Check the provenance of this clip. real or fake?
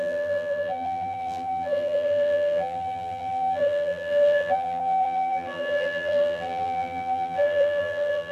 fake